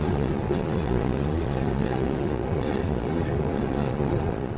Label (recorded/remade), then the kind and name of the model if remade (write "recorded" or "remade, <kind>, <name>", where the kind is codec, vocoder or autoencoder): remade, vocoder, Vocos